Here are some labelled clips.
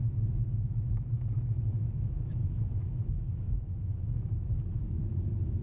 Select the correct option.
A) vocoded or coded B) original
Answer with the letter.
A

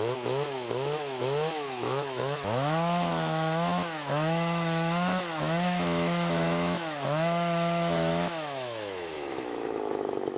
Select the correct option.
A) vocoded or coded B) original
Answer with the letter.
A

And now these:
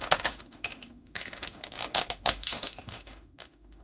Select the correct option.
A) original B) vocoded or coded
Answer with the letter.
B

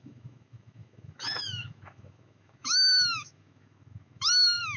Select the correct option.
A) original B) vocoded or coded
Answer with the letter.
B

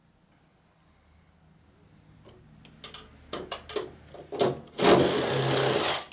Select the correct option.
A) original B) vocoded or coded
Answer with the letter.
A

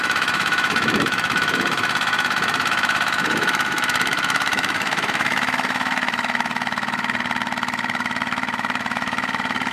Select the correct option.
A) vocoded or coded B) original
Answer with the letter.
A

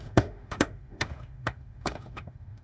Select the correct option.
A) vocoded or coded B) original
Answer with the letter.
A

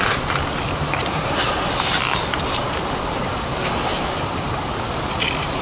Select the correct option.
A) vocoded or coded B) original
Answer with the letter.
B